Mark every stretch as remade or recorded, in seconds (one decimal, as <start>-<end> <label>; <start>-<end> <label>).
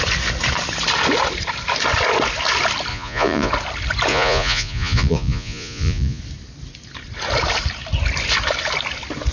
0.0-2.9 recorded; 2.9-3.5 remade; 3.5-4.1 recorded; 4.1-6.2 remade; 6.2-9.3 recorded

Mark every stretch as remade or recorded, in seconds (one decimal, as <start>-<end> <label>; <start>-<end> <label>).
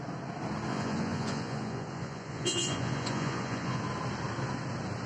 0.0-0.7 recorded; 0.7-3.8 remade; 3.8-5.1 recorded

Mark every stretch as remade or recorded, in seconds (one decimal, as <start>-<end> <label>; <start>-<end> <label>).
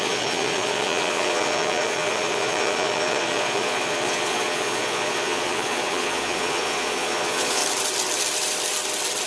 0.0-7.6 remade; 7.6-9.3 recorded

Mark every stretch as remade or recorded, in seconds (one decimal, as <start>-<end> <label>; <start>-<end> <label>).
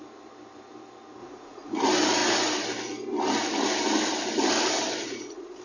0.0-1.2 recorded; 1.2-1.8 remade; 1.8-5.0 recorded; 5.0-5.6 remade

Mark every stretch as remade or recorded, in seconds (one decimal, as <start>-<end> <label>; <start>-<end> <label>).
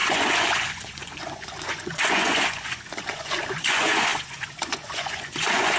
0.0-5.8 remade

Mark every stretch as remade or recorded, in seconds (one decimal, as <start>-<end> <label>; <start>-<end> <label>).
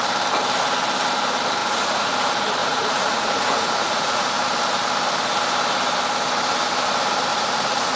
0.0-1.6 recorded; 1.6-2.1 remade; 2.1-2.6 recorded; 2.6-4.3 remade; 4.3-7.3 recorded; 7.3-8.0 remade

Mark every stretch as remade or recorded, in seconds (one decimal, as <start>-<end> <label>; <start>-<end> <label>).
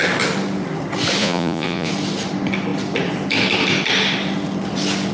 0.0-1.2 recorded; 1.2-1.9 remade; 1.9-5.1 recorded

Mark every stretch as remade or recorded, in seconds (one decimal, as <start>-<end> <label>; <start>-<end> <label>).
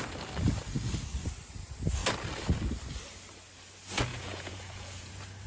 0.0-4.1 recorded; 4.1-5.1 remade; 5.1-5.5 recorded